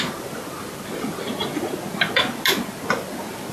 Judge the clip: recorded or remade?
recorded